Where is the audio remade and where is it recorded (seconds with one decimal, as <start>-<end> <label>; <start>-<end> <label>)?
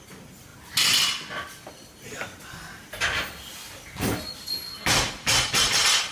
0.0-6.1 recorded